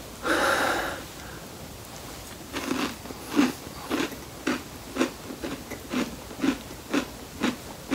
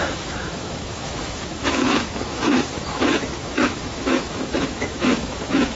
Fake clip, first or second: second